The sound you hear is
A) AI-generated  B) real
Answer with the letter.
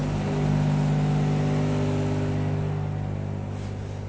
B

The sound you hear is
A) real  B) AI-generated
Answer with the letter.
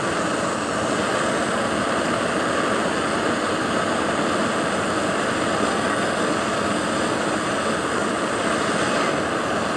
A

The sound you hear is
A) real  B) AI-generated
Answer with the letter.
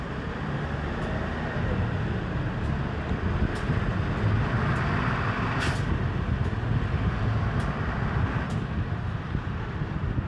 A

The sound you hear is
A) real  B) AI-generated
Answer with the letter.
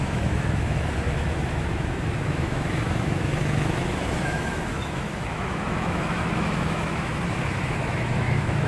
B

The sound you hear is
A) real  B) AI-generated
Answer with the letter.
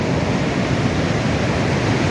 A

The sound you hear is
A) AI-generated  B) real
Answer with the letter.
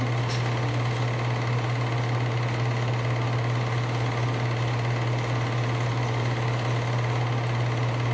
B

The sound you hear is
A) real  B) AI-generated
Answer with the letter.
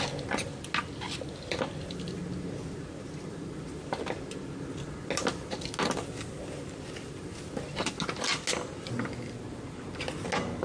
A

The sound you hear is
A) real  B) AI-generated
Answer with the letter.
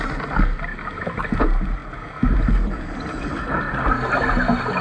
A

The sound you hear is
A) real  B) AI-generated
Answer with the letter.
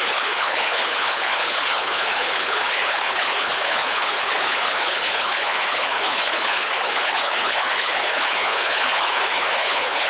B